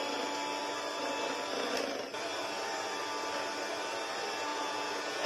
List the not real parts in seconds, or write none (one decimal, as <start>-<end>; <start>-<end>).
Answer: 4.5-5.3